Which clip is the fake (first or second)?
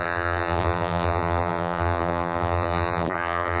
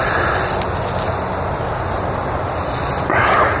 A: first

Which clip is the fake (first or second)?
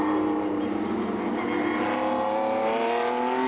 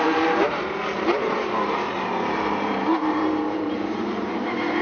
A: second